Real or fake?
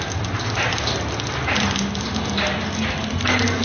real